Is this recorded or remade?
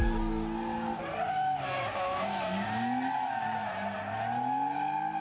recorded